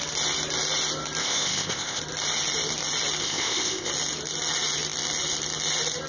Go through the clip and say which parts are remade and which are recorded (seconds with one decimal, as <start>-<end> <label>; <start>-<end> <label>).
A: 0.0-1.2 recorded; 1.2-2.0 remade; 2.0-3.2 recorded; 3.2-3.9 remade; 3.9-6.1 recorded